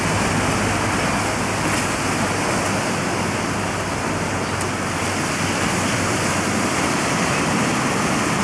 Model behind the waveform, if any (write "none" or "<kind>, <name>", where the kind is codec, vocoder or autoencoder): none